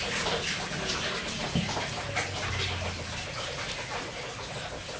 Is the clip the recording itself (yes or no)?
yes